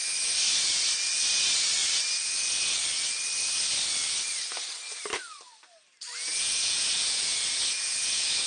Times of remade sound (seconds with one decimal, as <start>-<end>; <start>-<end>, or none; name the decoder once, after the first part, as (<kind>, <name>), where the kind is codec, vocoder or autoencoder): 6.6-8.5 (vocoder, Vocos)